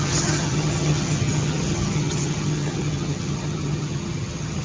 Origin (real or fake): fake